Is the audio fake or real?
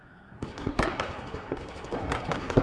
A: fake